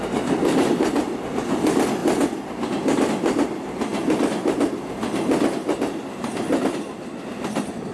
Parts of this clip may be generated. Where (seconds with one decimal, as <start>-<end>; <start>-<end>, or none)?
none